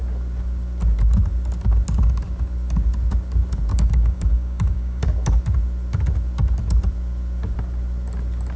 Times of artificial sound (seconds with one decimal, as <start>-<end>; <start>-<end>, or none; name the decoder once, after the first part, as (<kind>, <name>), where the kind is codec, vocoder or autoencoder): 3.7-5.0 (codec, DAC)